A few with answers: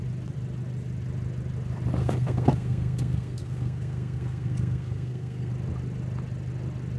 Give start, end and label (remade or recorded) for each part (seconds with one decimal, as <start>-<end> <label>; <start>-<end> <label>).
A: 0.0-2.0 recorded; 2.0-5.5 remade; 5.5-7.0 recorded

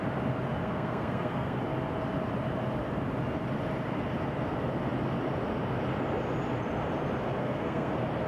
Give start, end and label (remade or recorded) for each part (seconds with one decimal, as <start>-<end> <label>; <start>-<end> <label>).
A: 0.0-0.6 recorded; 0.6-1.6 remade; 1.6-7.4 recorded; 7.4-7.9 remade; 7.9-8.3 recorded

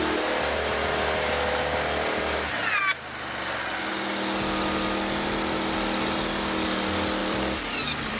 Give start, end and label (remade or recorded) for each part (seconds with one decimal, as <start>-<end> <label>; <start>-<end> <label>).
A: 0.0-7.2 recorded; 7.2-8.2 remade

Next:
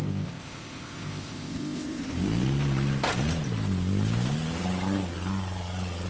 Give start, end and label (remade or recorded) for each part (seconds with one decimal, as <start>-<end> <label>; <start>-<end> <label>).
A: 0.0-2.0 remade; 2.0-6.1 recorded

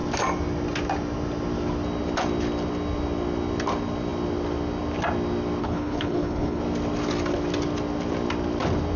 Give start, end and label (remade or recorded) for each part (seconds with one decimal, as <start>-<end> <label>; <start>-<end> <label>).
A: 0.0-5.6 recorded; 5.6-6.6 remade; 6.6-9.0 recorded

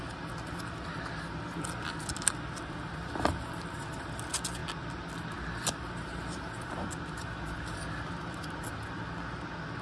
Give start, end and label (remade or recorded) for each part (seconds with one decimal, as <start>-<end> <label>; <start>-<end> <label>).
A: 0.0-9.8 recorded